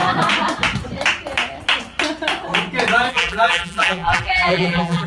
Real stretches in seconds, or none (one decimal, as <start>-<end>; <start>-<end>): 0.0-3.1